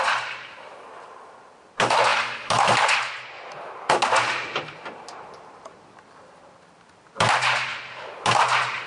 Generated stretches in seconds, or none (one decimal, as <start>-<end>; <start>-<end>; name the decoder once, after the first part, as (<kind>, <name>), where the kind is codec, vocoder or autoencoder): none